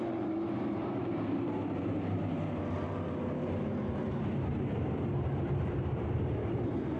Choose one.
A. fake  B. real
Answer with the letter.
A